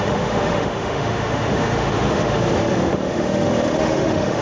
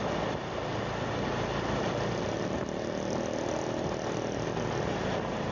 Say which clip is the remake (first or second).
first